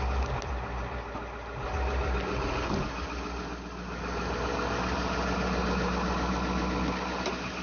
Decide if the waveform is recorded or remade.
recorded